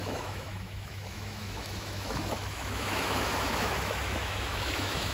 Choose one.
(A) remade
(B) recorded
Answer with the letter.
A